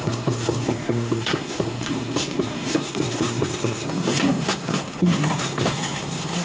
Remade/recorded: remade